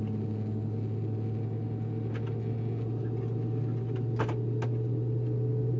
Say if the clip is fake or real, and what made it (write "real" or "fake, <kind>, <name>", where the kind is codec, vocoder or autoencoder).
real